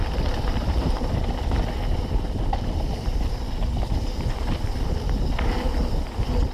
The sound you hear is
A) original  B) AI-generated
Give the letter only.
B